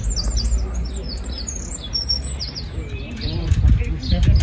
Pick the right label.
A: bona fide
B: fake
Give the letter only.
A